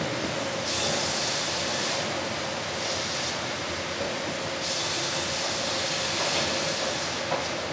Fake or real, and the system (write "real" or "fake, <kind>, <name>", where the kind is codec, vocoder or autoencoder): real